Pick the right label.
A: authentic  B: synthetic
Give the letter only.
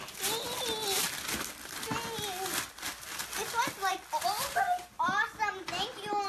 A